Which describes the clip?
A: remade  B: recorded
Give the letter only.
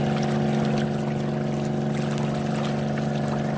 B